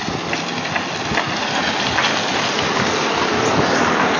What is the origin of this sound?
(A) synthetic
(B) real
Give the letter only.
B